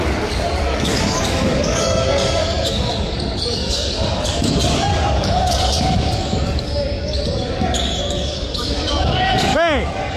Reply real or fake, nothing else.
fake